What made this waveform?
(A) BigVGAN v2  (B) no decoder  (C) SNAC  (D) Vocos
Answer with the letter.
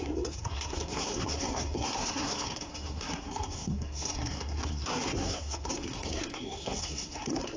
C